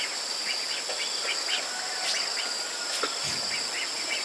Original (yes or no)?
yes